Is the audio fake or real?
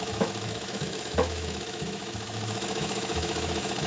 fake